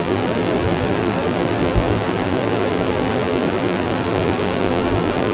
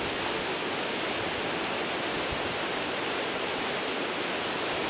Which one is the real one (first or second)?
second